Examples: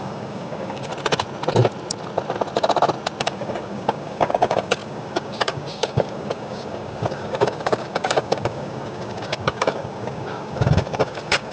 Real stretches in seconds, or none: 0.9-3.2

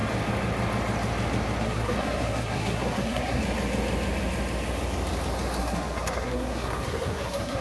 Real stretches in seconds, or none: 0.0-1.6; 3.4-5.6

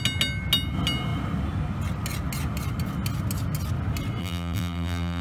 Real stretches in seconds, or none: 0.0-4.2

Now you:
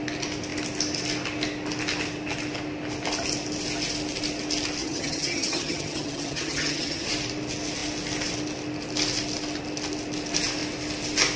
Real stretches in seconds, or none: 0.0-4.8; 7.1-11.4

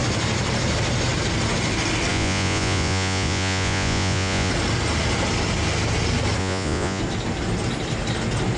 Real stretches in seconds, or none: 0.0-2.1; 4.5-6.4; 7.0-8.6

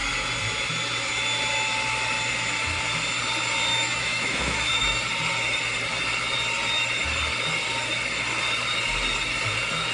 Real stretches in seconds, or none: 0.0-3.7; 5.0-9.9

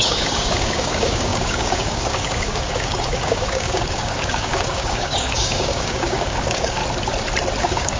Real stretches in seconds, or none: 6.8-7.6

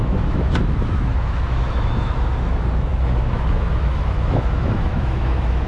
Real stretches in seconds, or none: none